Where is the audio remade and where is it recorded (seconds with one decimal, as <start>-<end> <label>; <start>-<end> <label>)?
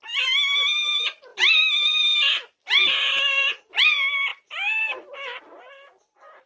0.0-6.5 recorded